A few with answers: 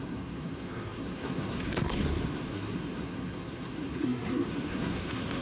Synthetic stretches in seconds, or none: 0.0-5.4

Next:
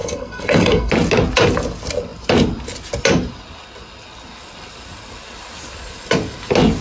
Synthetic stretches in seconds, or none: 0.0-0.9

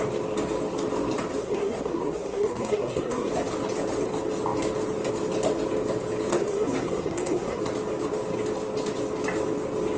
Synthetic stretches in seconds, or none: 1.4-3.3; 6.3-7.6